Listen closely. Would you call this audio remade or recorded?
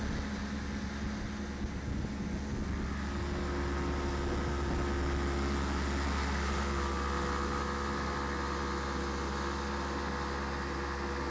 recorded